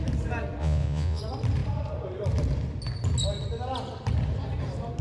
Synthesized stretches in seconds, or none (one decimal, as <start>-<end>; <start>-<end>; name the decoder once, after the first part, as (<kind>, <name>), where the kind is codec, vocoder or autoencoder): 0.6-1.2 (vocoder, Vocos)